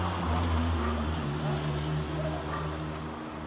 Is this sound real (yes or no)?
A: yes